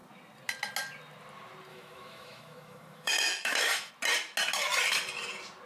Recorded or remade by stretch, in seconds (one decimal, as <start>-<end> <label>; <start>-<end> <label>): 0.0-1.7 recorded; 1.7-3.9 remade; 3.9-5.7 recorded